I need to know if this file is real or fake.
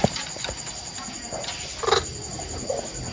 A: real